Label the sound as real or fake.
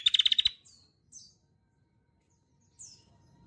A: real